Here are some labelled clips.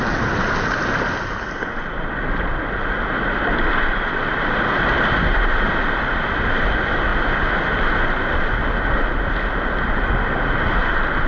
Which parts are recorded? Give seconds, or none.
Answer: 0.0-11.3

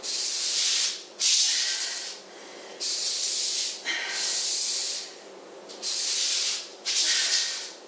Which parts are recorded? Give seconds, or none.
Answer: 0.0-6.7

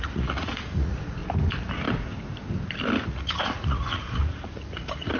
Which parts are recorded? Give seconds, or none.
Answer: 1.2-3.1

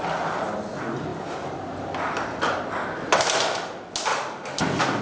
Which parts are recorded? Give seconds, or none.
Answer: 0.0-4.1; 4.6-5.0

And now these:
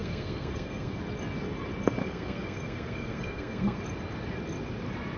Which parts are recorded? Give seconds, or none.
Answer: 1.0-2.0; 3.8-5.2

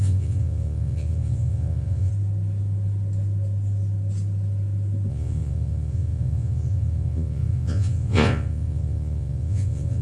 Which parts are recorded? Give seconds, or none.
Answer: 2.1-5.1